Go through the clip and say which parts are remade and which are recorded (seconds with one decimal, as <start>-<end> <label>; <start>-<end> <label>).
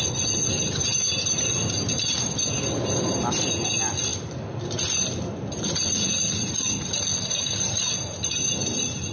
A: 0.0-9.1 recorded